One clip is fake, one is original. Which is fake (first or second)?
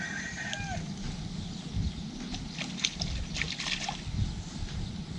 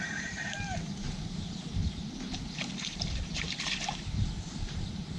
second